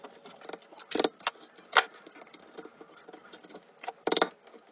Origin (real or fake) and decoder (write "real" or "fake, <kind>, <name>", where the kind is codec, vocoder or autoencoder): real